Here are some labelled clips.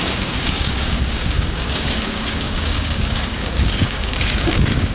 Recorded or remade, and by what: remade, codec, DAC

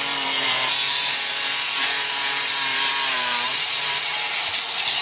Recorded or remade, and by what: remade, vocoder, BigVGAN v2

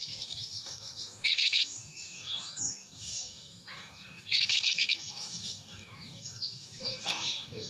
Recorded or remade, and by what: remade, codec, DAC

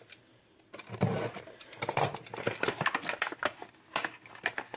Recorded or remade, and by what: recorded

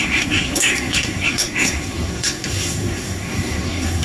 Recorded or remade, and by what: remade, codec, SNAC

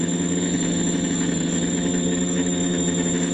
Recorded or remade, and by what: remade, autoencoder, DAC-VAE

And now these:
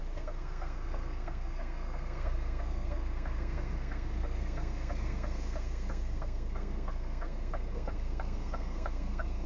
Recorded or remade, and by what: remade, codec, SNAC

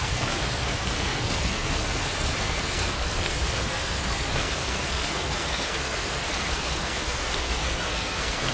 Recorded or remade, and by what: remade, codec, SNAC